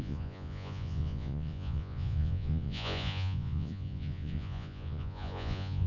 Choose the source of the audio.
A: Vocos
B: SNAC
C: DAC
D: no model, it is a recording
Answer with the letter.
A